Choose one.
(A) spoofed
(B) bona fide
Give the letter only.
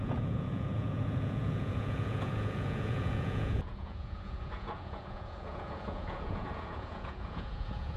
A